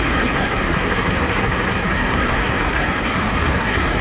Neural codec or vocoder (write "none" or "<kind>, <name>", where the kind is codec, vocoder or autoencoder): codec, SNAC